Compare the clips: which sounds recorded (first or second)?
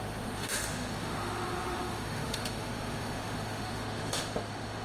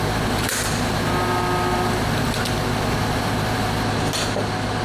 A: second